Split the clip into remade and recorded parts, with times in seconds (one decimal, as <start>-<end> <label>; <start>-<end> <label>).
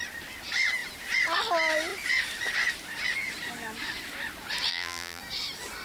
0.0-4.7 recorded; 4.7-5.2 remade; 5.2-5.8 recorded